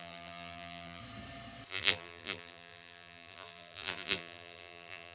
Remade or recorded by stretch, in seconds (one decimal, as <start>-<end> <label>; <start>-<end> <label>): 0.0-1.0 remade; 1.0-1.7 recorded; 1.7-5.1 remade